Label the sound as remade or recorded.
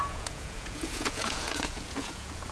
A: remade